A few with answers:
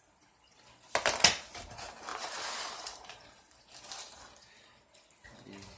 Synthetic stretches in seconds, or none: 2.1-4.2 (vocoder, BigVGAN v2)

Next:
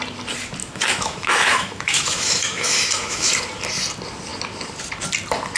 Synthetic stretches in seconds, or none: 0.6-3.3 (autoencoder, DAC-VAE)